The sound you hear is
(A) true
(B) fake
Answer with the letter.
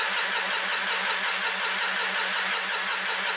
A